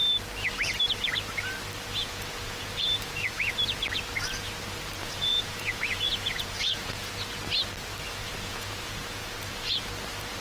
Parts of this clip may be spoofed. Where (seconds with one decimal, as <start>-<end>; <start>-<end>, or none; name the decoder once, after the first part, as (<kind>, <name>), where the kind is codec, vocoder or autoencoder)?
2.0-3.5 (vocoder, Vocos); 5.0-7.1; 8.2-9.9